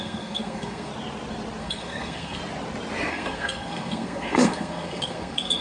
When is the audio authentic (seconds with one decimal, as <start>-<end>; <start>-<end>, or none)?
0.9-1.6; 2.4-3.1